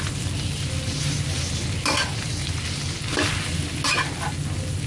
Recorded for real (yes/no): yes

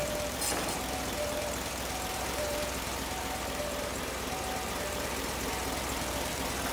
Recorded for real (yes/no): no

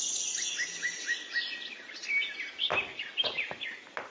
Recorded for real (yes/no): yes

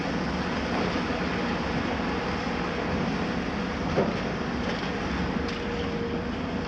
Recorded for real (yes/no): yes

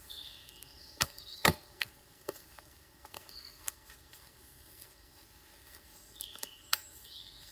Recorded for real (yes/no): no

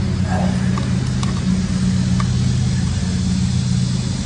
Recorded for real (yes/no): yes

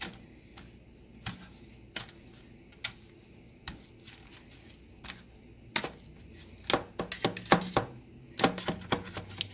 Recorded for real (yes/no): yes